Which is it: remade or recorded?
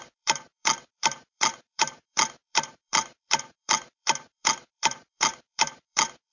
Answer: remade